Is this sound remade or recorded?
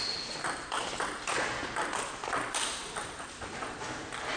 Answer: recorded